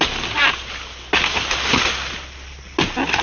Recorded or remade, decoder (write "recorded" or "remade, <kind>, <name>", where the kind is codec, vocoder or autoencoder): recorded